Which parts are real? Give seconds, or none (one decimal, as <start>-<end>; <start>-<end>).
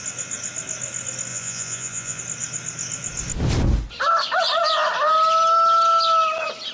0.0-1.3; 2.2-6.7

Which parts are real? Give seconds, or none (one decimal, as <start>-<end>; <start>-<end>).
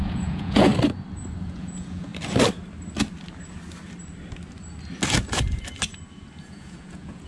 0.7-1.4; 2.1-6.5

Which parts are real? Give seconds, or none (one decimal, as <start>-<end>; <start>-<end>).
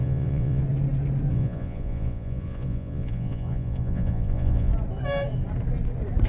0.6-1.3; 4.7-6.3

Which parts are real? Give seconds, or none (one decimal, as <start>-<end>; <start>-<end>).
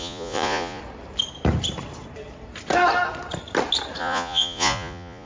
0.8-4.0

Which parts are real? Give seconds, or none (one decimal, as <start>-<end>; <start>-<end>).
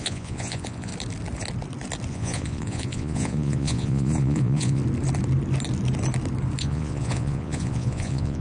0.9-2.1; 4.8-6.6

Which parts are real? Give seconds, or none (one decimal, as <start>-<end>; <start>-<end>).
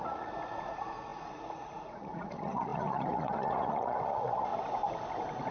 4.5-5.5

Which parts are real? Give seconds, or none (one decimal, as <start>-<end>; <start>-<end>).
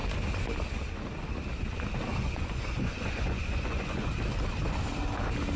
0.0-2.1; 4.1-5.6